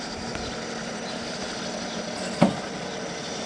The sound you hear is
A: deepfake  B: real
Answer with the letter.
A